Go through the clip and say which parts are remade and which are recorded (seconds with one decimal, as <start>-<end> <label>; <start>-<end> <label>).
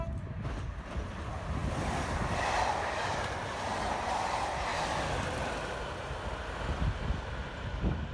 0.0-1.6 recorded; 1.6-2.1 remade; 2.1-4.7 recorded; 4.7-5.7 remade; 5.7-8.1 recorded